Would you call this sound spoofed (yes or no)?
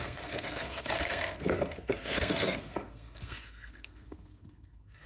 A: yes